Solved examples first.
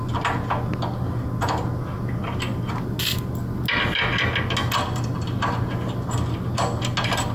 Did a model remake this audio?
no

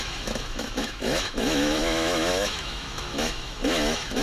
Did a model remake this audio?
yes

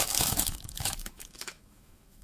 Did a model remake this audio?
yes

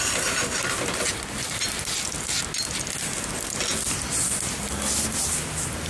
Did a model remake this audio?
no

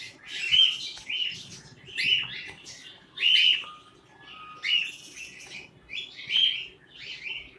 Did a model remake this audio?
no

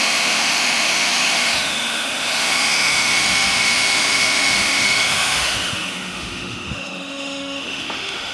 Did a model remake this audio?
yes